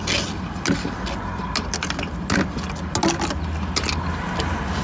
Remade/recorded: recorded